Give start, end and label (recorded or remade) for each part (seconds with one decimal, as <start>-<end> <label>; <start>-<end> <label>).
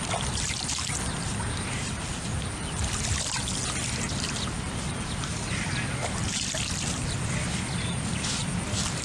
0.0-9.0 recorded